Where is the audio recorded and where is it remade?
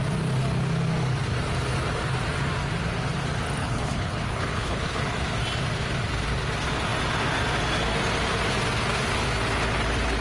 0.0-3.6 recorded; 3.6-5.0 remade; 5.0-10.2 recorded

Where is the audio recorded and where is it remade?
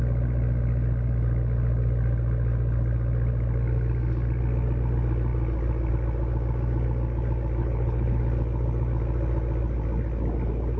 0.0-7.6 recorded; 7.6-8.2 remade; 8.2-10.8 recorded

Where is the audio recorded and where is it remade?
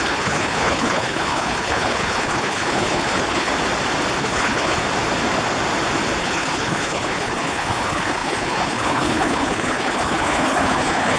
0.0-3.5 remade; 3.5-4.2 recorded; 4.2-4.8 remade; 4.8-6.2 recorded; 6.2-11.2 remade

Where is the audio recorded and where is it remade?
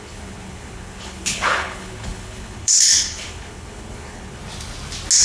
0.0-4.4 remade; 4.4-5.2 recorded